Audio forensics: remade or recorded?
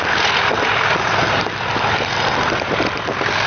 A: recorded